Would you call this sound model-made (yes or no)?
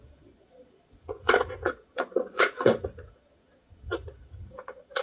yes